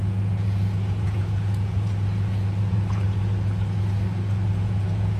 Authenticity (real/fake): fake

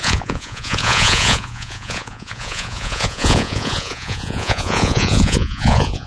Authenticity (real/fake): fake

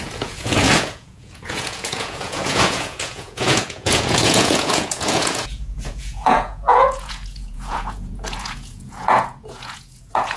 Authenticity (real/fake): fake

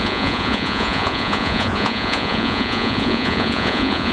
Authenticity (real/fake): fake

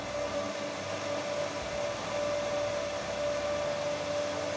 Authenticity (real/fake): real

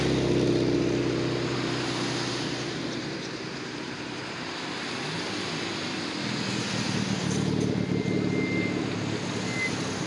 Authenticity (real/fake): real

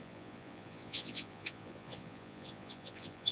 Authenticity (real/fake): fake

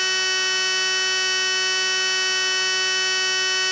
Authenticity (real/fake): real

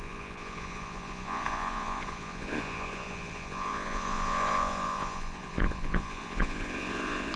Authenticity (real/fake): fake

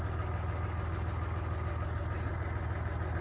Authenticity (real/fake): real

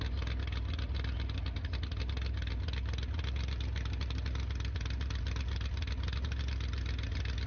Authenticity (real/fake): real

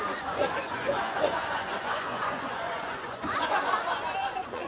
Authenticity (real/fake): fake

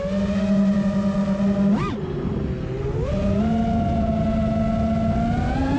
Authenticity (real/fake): real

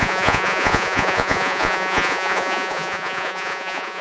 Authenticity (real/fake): fake